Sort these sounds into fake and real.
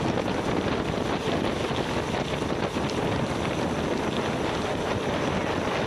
real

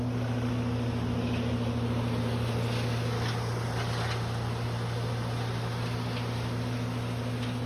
real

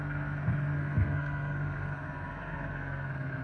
fake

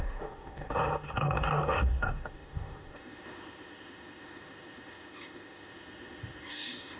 fake